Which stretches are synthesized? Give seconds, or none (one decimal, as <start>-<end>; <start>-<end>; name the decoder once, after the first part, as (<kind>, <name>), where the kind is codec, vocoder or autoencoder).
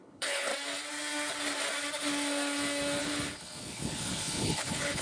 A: 0.0-0.5 (codec, HILCodec); 3.0-5.0